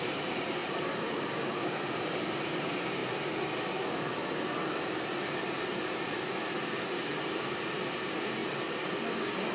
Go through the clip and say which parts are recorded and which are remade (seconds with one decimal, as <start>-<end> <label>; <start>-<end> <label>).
0.0-3.0 remade; 3.0-6.9 recorded; 6.9-8.4 remade; 8.4-9.5 recorded